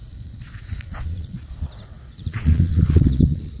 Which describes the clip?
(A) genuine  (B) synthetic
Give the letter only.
B